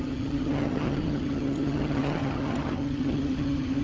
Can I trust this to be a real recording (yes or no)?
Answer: no